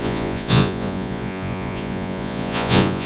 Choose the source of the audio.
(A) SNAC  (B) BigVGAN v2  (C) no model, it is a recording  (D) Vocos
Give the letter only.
D